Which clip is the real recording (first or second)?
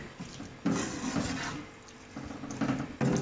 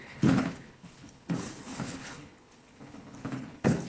first